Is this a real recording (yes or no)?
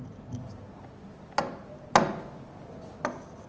yes